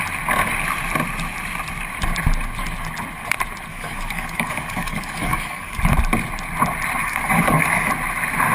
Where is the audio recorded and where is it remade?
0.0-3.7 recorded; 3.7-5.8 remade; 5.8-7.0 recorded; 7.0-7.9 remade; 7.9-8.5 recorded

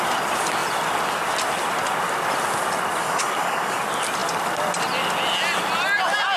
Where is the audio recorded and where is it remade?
0.0-3.0 recorded; 3.0-3.8 remade; 3.8-6.4 recorded

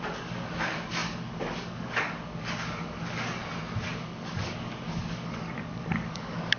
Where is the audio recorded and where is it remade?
0.0-3.4 remade; 3.4-3.9 recorded; 3.9-6.6 remade

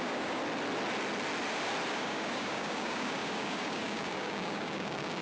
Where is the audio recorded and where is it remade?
0.0-0.4 remade; 0.4-1.9 recorded; 1.9-5.2 remade

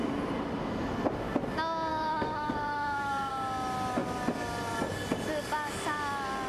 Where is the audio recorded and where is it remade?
0.0-1.9 recorded; 1.9-3.3 remade; 3.3-6.5 recorded

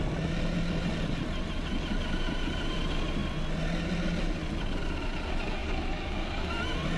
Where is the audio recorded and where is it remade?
0.0-5.6 recorded; 5.6-6.5 remade; 6.5-7.0 recorded

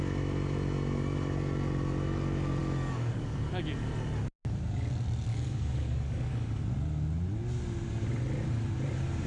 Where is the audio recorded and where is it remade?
0.0-2.6 recorded; 2.6-3.6 remade; 3.6-5.3 recorded; 5.3-6.6 remade; 6.6-9.3 recorded

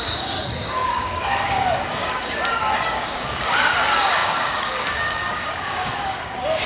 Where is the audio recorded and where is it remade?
0.0-6.7 remade